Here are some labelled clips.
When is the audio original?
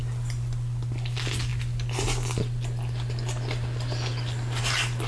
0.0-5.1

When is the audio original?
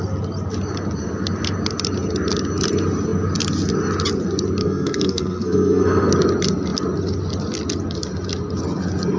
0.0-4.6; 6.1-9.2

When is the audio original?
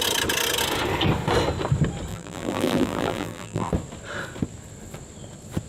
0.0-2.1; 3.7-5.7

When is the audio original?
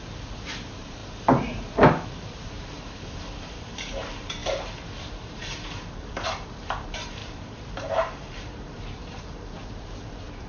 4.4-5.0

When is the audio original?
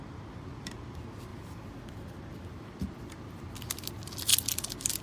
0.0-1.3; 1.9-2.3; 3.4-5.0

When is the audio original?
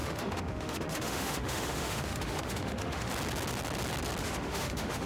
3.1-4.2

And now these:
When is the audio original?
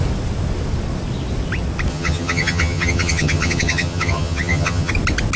0.0-1.9; 4.9-5.4